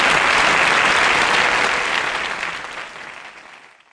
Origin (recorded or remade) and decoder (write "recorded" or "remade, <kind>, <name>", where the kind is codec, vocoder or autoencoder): recorded